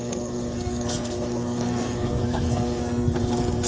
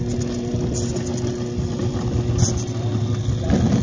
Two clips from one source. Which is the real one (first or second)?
second